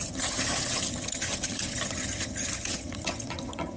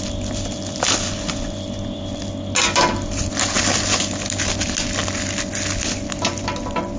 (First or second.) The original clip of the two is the second